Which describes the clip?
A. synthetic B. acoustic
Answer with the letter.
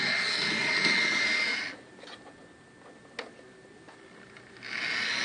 B